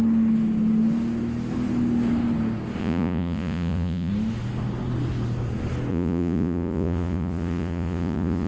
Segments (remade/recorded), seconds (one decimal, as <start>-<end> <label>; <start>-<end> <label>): 0.0-2.8 recorded; 2.8-4.1 remade; 4.1-5.9 recorded; 5.9-8.5 remade